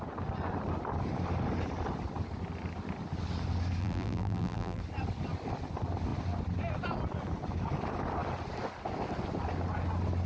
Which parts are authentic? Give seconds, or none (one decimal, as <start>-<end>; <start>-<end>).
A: 0.0-3.8; 4.8-10.3

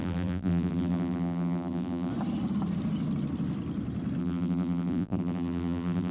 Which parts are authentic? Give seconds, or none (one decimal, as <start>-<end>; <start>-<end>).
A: 2.1-4.2

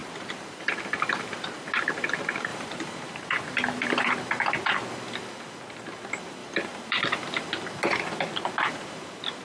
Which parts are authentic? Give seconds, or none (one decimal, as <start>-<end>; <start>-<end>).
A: 1.7-2.5; 4.1-6.4; 7.0-9.4

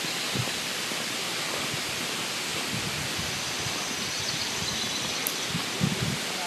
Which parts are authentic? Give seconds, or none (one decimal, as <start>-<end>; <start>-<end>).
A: 0.0-6.5

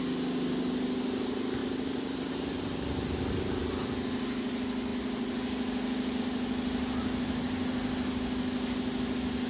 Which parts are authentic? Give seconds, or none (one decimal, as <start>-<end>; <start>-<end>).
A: 0.0-1.6; 2.3-9.5

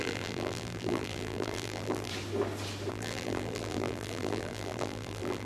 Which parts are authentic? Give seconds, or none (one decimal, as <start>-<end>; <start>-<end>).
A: 2.1-2.9

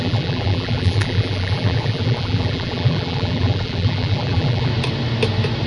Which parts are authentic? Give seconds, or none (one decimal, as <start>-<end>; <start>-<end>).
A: 4.7-5.7